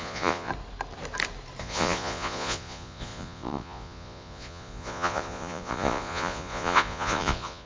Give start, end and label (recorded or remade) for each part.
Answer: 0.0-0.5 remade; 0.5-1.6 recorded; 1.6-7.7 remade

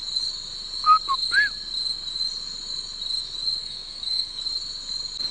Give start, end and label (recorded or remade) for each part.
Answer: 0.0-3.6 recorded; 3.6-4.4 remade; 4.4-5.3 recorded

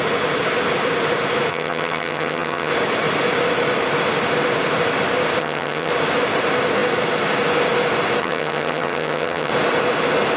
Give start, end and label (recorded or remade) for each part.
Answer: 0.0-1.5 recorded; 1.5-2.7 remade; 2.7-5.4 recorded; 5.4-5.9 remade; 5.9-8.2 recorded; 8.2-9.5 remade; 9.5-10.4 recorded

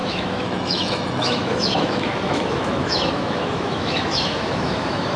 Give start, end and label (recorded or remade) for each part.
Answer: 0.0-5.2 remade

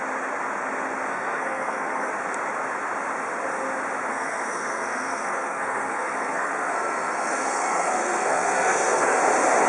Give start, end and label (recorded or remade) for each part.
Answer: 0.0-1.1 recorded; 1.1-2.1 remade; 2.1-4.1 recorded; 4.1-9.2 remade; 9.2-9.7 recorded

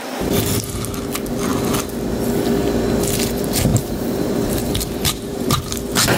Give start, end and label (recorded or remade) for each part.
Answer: 0.0-3.7 recorded; 3.7-5.6 remade; 5.6-6.2 recorded

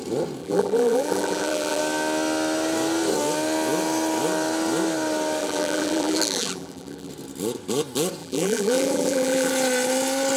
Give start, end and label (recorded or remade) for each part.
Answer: 0.0-0.4 recorded; 0.4-1.8 remade; 1.8-5.4 recorded; 5.4-7.1 remade; 7.1-8.2 recorded; 8.2-9.5 remade; 9.5-10.4 recorded

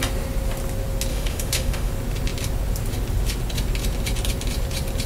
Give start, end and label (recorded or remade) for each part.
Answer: 0.0-1.1 recorded; 1.1-1.9 remade; 1.9-5.1 recorded